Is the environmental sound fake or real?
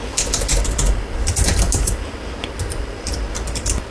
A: real